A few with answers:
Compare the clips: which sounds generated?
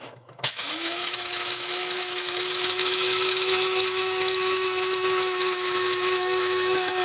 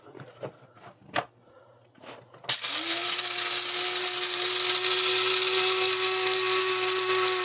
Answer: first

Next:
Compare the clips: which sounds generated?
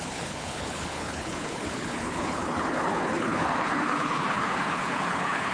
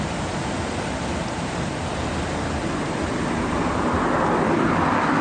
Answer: first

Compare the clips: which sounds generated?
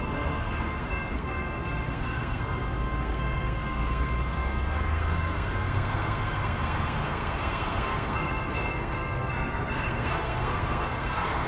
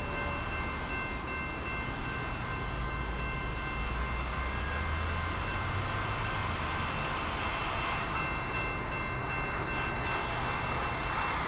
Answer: first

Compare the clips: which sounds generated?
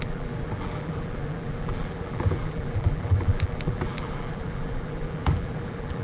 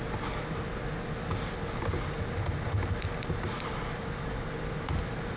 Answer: first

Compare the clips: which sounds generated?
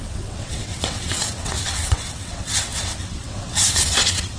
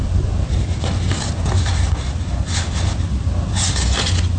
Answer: first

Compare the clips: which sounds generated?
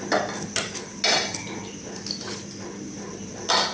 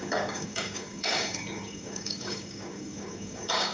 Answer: second